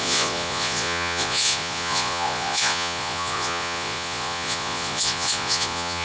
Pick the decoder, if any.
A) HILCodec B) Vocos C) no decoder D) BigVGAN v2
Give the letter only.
B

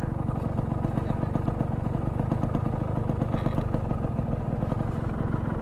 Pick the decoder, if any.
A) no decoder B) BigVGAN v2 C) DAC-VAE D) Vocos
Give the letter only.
A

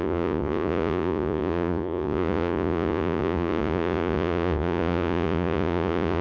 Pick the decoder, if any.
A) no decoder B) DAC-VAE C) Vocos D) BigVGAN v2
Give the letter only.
C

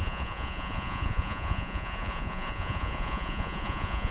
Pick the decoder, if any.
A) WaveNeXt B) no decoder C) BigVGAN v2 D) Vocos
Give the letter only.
D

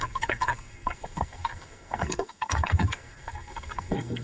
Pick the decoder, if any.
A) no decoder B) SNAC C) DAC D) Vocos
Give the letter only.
B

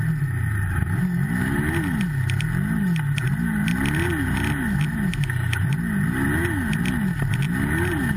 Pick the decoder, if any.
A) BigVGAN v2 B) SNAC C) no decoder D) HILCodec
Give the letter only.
C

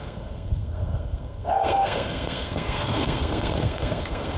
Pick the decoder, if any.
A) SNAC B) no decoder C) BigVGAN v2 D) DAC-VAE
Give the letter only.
A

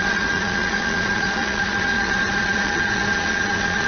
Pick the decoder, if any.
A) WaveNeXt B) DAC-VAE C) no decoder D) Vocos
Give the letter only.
D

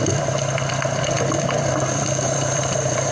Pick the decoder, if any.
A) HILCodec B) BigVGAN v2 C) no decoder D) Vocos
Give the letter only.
B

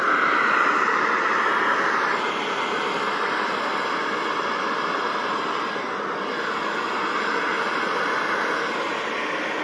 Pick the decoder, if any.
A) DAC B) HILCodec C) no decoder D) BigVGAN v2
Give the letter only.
C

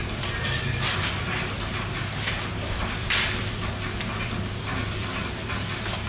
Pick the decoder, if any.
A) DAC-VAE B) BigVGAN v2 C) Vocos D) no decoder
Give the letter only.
B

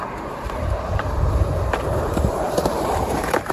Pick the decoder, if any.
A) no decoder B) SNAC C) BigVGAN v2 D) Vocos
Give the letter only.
C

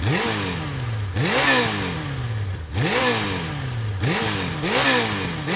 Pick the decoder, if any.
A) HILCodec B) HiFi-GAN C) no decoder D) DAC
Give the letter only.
C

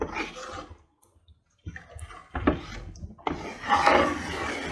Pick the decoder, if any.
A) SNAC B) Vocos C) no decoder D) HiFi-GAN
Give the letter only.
C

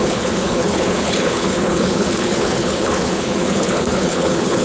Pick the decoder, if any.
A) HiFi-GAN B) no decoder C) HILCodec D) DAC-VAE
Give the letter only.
C